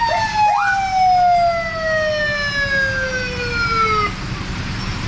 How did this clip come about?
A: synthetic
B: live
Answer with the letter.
B